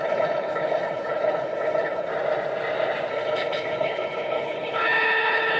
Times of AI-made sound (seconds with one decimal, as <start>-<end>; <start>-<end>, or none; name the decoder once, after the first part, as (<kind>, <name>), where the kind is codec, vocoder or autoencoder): 0.0-2.1 (codec, HILCodec); 3.1-5.6

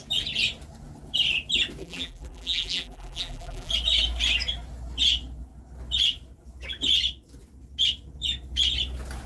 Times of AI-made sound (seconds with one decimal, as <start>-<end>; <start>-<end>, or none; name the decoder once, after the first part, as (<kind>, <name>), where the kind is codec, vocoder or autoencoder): 1.8-3.7 (vocoder, BigVGAN v2)

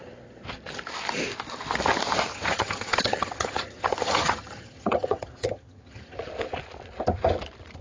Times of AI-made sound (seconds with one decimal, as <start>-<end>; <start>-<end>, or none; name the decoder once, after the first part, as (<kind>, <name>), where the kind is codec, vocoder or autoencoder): 2.3-6.2 (vocoder, HiFi-GAN)

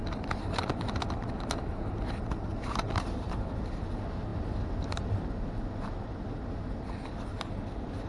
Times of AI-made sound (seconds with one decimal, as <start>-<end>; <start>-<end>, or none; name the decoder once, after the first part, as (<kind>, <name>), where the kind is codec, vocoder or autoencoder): 2.5-3.4 (vocoder, BigVGAN v2)

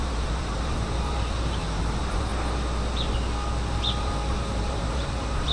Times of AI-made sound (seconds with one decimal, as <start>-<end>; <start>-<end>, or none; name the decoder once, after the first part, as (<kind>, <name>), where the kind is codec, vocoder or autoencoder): 0.0-2.3 (vocoder, BigVGAN v2); 4.0-5.5

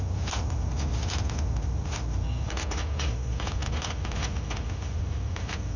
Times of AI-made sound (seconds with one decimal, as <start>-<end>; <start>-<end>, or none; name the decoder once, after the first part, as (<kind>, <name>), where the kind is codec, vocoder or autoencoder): none

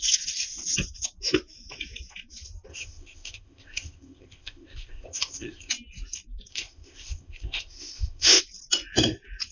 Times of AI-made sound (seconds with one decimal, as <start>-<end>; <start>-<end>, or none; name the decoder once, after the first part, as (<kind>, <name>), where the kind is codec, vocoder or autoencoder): 2.7-5.7 (codec, ZipCodec); 6.5-8.4

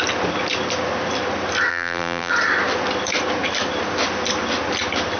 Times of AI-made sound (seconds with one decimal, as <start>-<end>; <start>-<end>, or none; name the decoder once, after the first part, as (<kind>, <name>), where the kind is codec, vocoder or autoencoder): 1.7-2.3 (vocoder, BigVGAN v2)